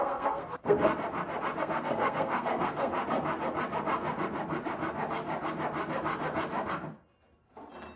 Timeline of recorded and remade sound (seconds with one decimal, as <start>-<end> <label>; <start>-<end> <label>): 0.0-0.9 remade; 0.9-1.6 recorded; 1.6-2.9 remade; 2.9-8.0 recorded

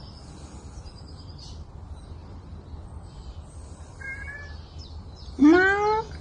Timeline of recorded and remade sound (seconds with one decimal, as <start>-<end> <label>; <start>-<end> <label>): 0.0-6.2 recorded

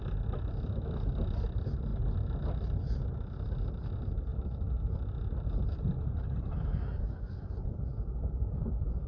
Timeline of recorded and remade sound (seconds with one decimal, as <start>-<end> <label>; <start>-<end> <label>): 0.0-9.1 remade

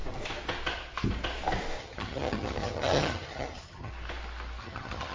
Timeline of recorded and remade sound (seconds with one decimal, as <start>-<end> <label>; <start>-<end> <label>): 0.0-1.8 recorded; 1.8-3.9 remade; 3.9-4.6 recorded; 4.6-5.1 remade

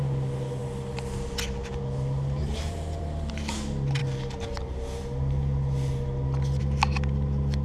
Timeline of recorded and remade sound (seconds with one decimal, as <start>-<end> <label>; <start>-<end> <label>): 0.0-2.4 recorded; 2.4-3.3 remade; 3.3-7.6 recorded

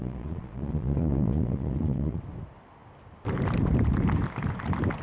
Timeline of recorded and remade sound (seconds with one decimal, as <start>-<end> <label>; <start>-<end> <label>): 0.0-2.2 remade; 2.2-5.0 recorded

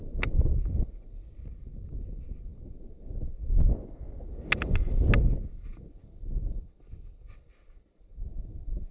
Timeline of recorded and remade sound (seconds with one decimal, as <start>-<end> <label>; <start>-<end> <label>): 0.0-8.9 recorded

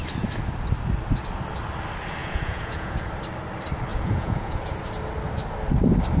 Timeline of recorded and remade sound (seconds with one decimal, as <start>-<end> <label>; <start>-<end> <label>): 0.0-2.2 recorded; 2.2-3.1 remade; 3.1-3.9 recorded; 3.9-4.7 remade; 4.7-6.2 recorded